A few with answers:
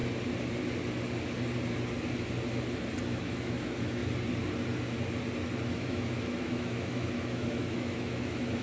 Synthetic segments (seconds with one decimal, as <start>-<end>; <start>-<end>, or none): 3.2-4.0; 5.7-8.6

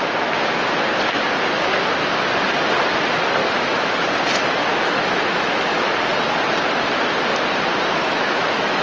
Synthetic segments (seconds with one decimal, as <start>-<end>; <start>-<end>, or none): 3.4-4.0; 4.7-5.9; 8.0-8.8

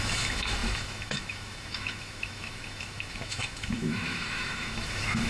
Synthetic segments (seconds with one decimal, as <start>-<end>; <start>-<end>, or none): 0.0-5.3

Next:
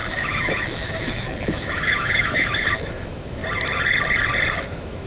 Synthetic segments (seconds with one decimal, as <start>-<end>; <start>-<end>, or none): 0.0-3.4; 4.6-5.1